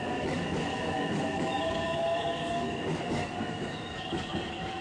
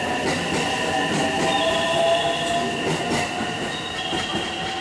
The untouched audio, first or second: second